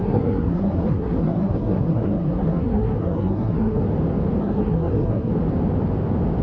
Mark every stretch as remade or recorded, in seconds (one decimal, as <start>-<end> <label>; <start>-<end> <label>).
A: 0.0-3.8 remade; 3.8-4.4 recorded; 4.4-5.3 remade; 5.3-6.4 recorded